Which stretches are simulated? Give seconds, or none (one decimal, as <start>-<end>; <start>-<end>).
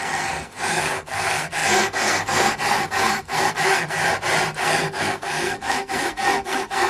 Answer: 0.0-4.0; 4.6-6.9